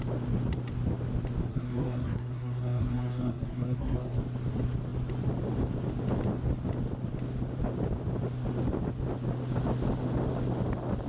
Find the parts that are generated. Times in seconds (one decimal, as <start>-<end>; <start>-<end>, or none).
1.5-4.2

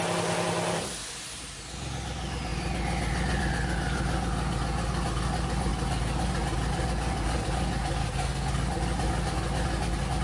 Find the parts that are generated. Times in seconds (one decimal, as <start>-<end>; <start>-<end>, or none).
8.0-8.5

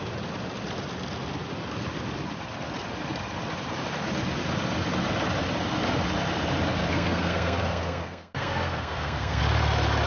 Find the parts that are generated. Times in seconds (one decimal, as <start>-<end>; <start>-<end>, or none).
6.8-9.4

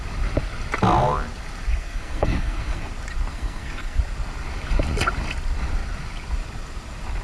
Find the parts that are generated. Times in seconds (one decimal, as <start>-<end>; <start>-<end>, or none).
1.7-2.9; 3.3-4.0

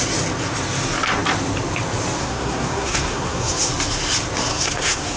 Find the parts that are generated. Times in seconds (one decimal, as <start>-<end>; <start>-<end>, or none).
2.2-3.7; 4.5-5.2